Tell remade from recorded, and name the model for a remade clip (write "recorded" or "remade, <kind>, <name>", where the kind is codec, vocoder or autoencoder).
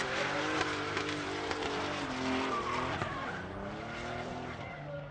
recorded